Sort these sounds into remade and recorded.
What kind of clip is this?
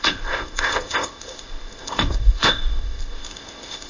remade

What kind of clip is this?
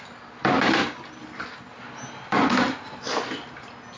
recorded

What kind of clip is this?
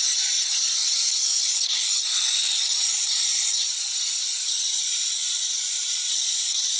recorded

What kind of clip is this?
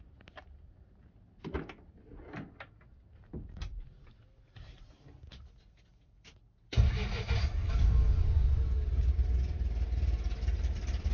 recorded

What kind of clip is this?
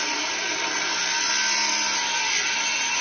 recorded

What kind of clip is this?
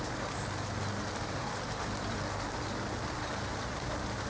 recorded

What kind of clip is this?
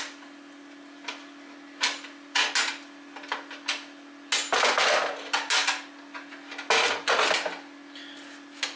recorded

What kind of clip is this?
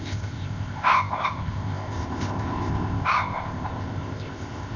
remade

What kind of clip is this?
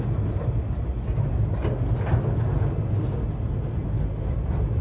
recorded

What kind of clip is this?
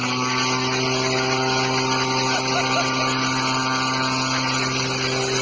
recorded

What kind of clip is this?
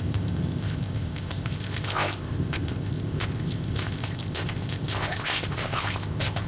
remade